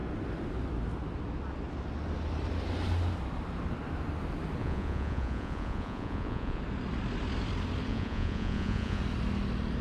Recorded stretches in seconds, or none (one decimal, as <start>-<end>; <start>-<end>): 0.0-4.6; 6.6-7.9; 9.0-9.8